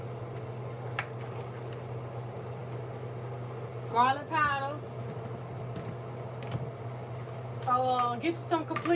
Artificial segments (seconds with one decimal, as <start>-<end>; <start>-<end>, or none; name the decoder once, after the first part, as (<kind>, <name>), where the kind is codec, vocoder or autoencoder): none